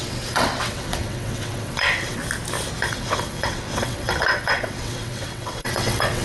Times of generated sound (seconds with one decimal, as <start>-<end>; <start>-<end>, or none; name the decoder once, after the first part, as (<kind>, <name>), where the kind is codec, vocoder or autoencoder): 0.0-2.2 (vocoder, WaveNeXt); 2.9-6.2